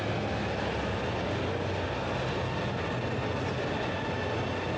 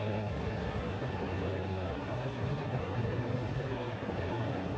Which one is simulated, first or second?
second